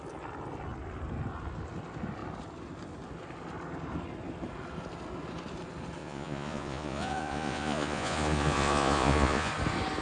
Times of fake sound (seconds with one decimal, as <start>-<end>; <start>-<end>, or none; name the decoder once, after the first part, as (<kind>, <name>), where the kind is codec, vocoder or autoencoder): 6.0-9.5 (vocoder, Vocos)